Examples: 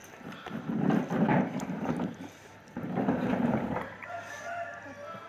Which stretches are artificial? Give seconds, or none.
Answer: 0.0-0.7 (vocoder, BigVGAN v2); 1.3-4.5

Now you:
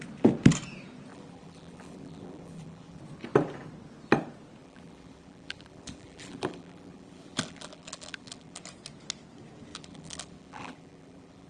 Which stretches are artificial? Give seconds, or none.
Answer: 1.1-3.0 (vocoder, BigVGAN v2); 4.6-8.6; 9.7-11.5

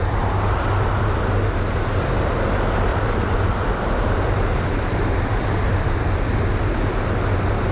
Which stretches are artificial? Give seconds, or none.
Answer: 2.9-6.5 (vocoder, BigVGAN v2)

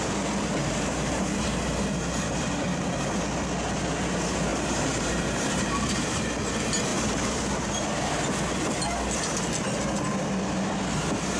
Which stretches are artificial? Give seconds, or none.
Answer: 0.6-3.2 (vocoder, BigVGAN v2); 4.5-6.2; 6.9-8.4

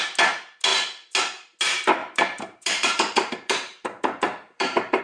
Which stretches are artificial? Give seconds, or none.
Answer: 2.0-5.0 (vocoder, BigVGAN v2)

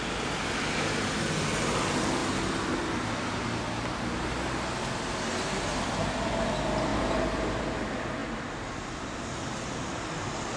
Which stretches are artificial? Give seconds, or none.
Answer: 5.7-6.5 (vocoder, BigVGAN v2); 8.2-9.4

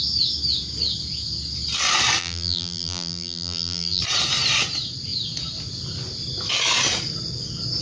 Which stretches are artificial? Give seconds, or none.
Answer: 2.2-4.0 (vocoder, BigVGAN v2)

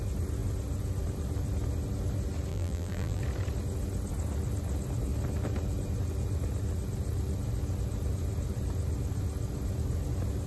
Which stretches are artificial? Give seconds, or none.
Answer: 2.5-3.2 (vocoder, BigVGAN v2)